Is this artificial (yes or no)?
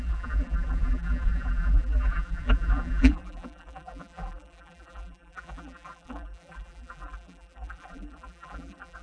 yes